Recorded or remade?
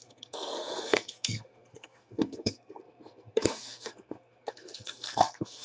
remade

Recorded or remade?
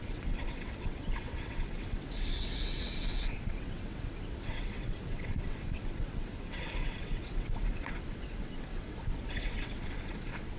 remade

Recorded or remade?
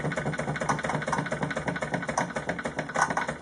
recorded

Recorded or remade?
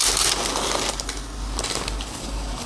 recorded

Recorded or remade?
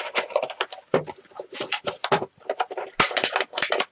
recorded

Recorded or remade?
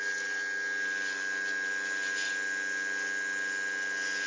recorded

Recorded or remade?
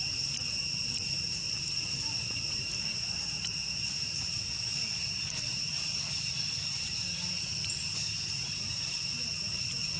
recorded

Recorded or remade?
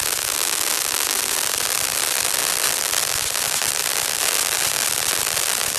recorded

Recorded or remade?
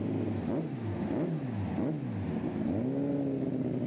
recorded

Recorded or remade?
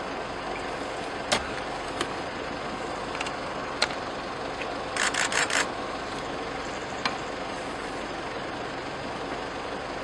recorded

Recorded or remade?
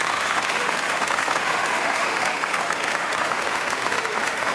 remade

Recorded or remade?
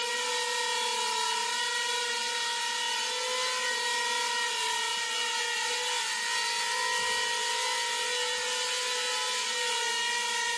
recorded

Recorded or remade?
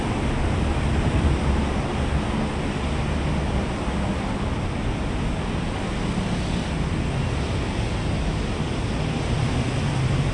recorded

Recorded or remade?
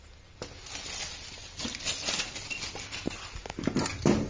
recorded